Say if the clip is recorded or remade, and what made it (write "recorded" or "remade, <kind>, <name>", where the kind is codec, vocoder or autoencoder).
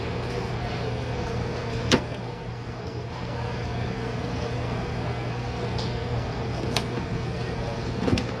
remade, codec, SNAC